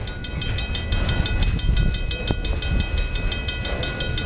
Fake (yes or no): no